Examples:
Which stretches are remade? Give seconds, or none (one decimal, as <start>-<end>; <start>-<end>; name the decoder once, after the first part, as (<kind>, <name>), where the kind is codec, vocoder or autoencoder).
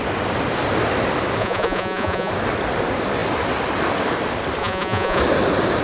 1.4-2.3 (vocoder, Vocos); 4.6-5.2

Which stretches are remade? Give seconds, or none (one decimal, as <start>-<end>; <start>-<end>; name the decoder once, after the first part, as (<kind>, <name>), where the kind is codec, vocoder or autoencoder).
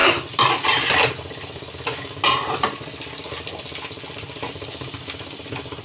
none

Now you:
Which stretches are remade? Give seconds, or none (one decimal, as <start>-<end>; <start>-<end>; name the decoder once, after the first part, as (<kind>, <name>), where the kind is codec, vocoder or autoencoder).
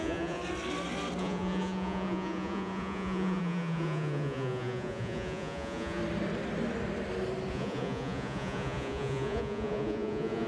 0.0-0.4 (vocoder, Vocos); 1.2-6.0; 7.5-10.5